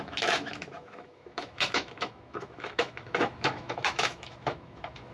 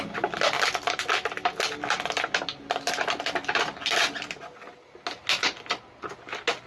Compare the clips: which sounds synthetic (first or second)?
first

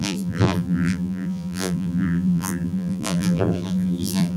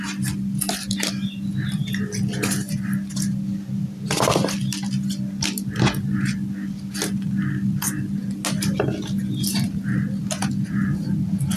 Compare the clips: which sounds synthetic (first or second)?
first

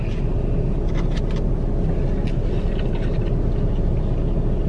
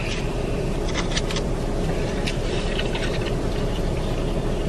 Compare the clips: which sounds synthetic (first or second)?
second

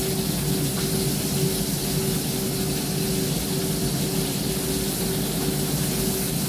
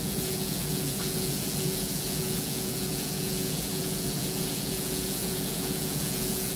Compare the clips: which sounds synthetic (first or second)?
second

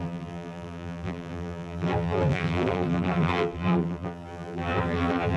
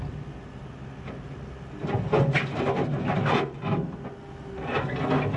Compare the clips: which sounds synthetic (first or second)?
first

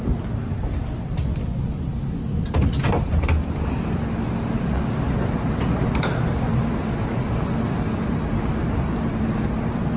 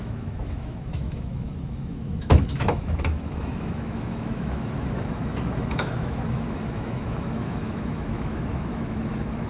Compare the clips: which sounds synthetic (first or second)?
second